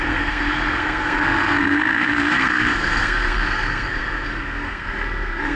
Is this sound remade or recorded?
remade